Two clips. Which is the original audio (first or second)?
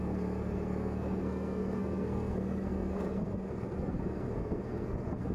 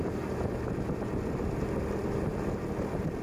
second